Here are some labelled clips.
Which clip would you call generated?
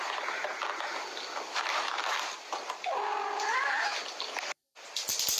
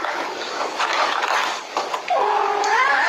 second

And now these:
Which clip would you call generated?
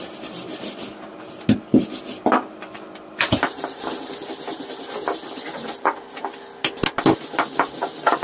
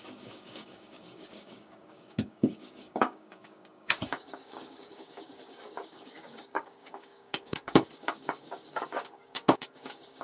second